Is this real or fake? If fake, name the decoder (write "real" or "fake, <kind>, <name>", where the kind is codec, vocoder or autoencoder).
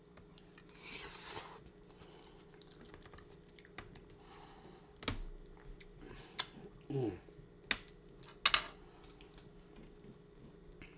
real